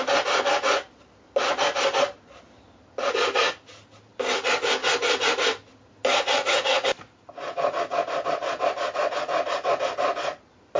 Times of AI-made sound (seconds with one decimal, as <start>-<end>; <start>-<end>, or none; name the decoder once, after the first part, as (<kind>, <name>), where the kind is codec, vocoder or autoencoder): none